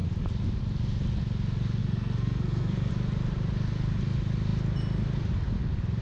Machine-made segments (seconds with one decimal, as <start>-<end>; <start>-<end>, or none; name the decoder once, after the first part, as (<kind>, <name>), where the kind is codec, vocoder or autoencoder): 1.8-2.9 (codec, SNAC)